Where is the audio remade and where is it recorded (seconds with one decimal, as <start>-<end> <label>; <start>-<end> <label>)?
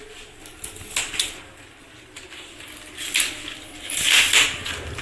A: 0.0-5.0 recorded